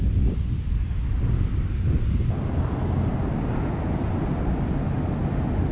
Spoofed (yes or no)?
no